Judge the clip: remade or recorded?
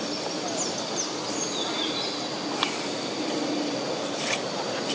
recorded